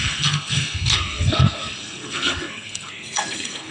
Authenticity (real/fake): fake